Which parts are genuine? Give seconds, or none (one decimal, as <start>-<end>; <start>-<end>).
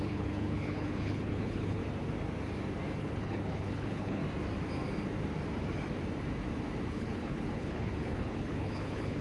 1.8-3.0; 4.2-6.9